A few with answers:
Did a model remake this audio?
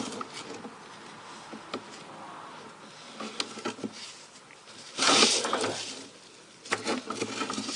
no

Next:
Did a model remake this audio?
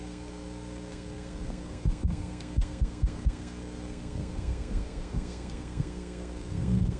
yes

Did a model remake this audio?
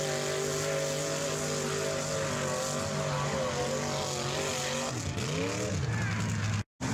no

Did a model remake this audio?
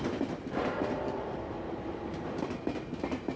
no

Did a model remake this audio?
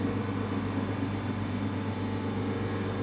no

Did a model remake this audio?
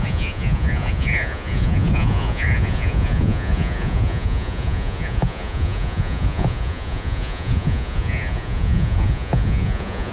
yes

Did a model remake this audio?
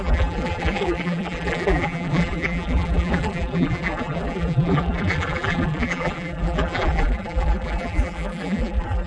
yes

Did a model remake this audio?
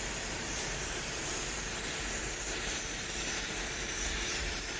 yes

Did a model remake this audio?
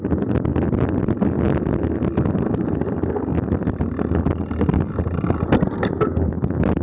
no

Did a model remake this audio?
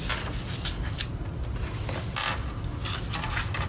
no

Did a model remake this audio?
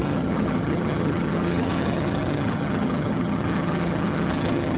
yes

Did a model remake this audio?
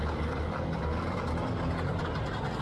no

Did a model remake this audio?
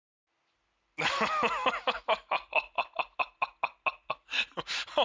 no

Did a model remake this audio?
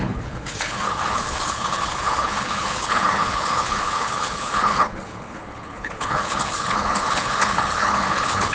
yes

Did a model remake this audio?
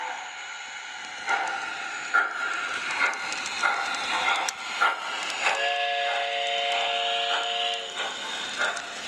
no